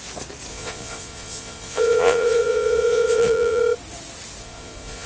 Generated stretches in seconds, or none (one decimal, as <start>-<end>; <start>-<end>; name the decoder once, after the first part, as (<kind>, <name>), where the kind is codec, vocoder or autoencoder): 0.5-3.6 (vocoder, Vocos); 4.4-5.1